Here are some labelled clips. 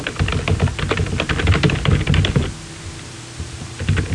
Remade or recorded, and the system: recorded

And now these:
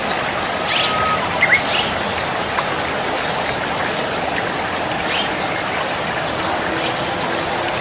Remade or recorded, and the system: recorded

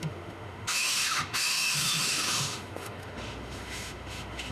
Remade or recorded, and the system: remade, autoencoder, DAC-VAE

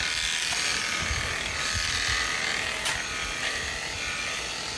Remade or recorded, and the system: recorded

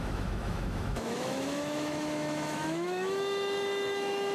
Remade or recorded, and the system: remade, autoencoder, DAC-VAE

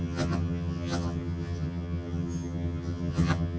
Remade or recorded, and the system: remade, vocoder, HiFi-GAN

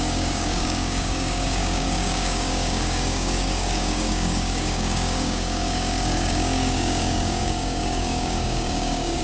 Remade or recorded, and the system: remade, codec, DAC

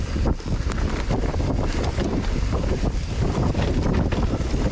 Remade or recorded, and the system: remade, vocoder, BigVGAN v2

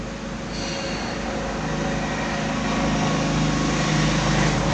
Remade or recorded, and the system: recorded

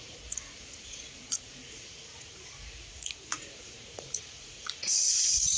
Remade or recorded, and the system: remade, vocoder, Vocos